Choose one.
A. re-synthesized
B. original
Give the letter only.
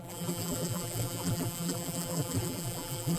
A